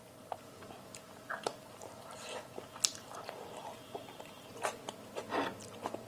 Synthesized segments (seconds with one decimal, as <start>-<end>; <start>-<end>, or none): 0.0-0.6